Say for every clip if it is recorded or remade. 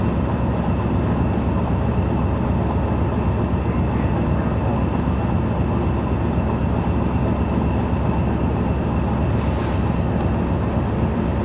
recorded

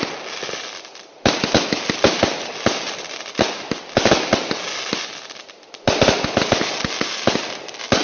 recorded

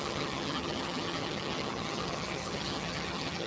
remade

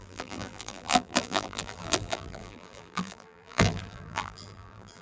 remade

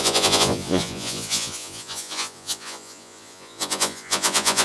remade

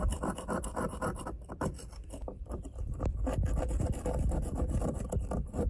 remade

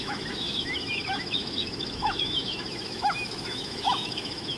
remade